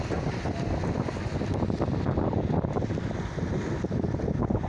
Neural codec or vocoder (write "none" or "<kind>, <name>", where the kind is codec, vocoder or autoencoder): none